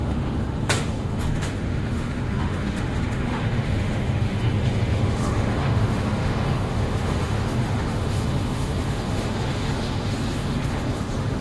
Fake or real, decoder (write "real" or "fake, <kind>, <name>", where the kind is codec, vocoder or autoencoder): fake, autoencoder, DAC-VAE